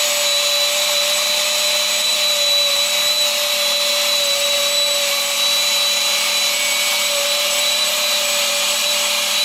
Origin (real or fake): real